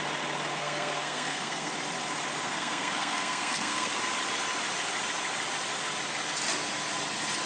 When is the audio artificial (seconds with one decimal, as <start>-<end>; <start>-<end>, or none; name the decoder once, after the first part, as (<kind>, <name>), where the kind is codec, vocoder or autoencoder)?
0.5-1.7 (codec, SNAC); 2.3-4.0